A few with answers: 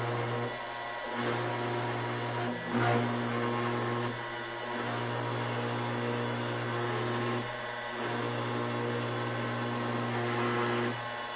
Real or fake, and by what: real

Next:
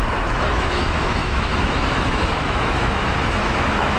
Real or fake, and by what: fake, autoencoder, DAC-VAE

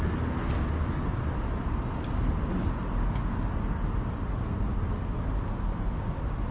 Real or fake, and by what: real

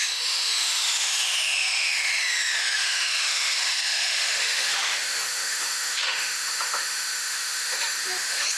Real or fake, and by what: fake, autoencoder, DAC-VAE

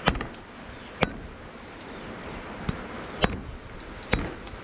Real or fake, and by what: real